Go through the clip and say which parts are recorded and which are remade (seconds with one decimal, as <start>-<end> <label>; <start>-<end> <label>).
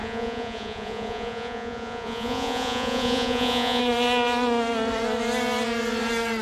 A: 0.0-3.8 remade; 3.8-6.4 recorded